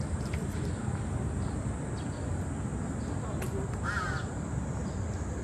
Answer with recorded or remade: recorded